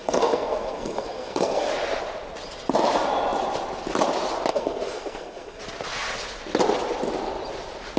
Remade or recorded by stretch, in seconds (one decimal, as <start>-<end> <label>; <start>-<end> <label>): 0.0-1.7 remade; 1.7-4.5 recorded; 4.5-5.6 remade; 5.6-8.0 recorded